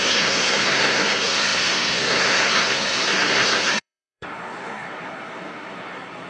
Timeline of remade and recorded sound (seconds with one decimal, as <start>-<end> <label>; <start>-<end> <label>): 0.0-6.3 remade